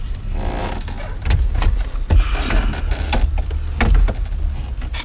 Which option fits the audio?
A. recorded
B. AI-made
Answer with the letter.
A